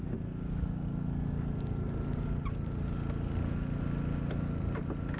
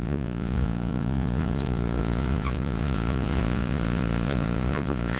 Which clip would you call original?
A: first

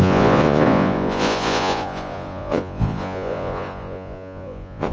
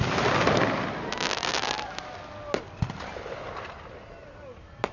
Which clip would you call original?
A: second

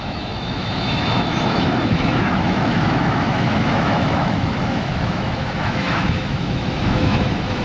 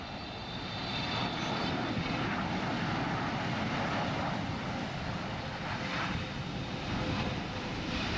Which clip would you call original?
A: second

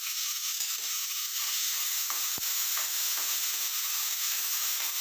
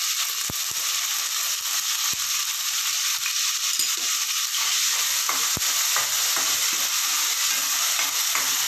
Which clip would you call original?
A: second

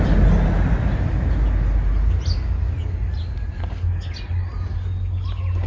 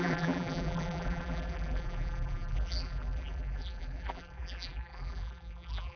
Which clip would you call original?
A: first